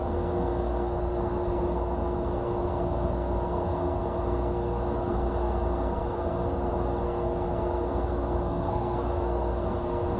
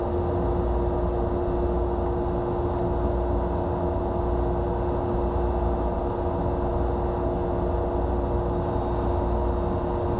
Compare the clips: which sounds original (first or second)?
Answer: second